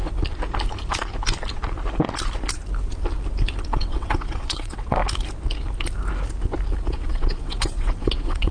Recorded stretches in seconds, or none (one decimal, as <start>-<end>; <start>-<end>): 0.0-3.6; 5.0-6.9